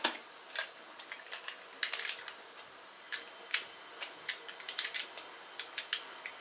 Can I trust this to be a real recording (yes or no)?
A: yes